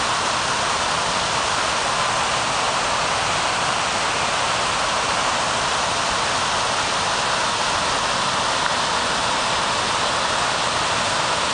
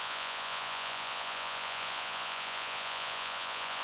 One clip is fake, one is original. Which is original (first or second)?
first